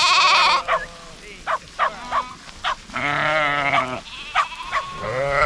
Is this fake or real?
real